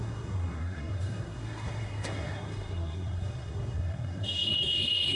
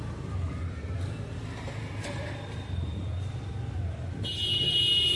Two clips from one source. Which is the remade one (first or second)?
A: first